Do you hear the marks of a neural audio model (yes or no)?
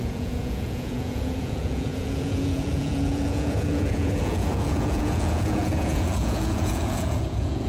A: yes